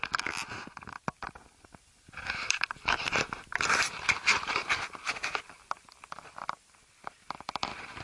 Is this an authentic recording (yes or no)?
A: yes